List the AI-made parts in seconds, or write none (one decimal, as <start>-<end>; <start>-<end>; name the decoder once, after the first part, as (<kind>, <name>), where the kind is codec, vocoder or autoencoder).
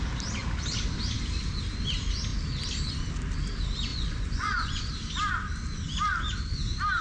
3.9-4.9 (vocoder, Vocos)